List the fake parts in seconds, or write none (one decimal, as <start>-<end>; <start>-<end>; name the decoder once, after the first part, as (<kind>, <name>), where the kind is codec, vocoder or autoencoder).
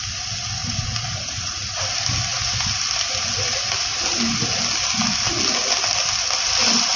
0.6-1.8 (vocoder, Vocos)